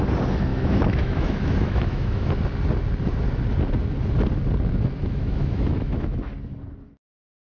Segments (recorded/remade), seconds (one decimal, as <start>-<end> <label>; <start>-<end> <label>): 0.0-0.5 recorded; 0.5-2.3 remade; 2.3-5.0 recorded; 5.0-6.3 remade; 6.3-7.4 recorded